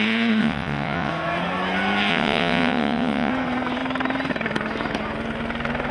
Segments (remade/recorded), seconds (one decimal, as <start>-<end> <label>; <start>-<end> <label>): 0.0-0.4 recorded; 0.4-1.1 remade; 1.1-2.1 recorded; 2.1-3.3 remade; 3.3-5.9 recorded